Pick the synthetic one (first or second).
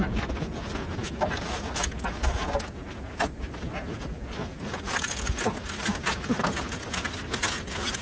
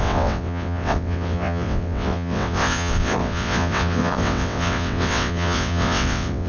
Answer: second